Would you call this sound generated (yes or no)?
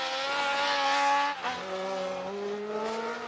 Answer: no